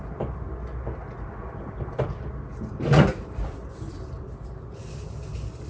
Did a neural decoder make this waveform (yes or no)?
no